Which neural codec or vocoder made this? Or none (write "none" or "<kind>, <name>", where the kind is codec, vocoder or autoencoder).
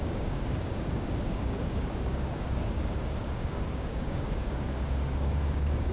codec, DAC